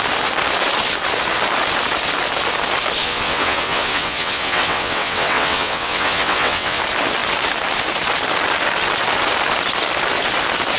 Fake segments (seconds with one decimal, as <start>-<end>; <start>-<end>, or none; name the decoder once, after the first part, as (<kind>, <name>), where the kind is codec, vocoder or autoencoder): 3.0-6.8 (vocoder, WaveNeXt)